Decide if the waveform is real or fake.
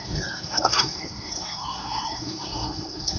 fake